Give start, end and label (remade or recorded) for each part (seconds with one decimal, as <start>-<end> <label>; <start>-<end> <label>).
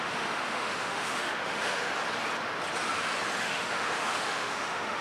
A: 0.0-1.9 remade; 1.9-3.4 recorded; 3.4-5.0 remade